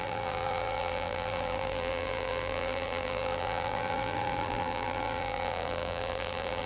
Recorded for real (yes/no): no